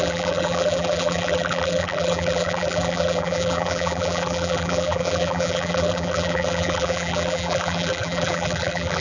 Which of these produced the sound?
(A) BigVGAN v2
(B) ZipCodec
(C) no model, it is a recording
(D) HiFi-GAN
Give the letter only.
A